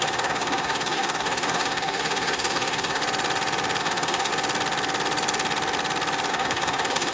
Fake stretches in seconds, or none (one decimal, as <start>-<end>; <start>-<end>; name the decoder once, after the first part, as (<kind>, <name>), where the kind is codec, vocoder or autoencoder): 0.0-3.0 (codec, SNAC); 3.8-4.3; 6.3-7.1